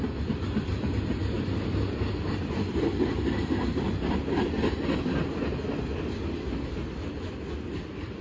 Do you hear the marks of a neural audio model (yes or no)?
no